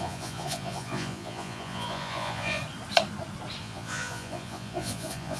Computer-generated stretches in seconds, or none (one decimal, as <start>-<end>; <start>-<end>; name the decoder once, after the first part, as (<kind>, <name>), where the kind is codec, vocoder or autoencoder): 0.0-2.6 (vocoder, Vocos); 3.6-5.4